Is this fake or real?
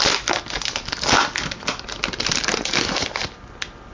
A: real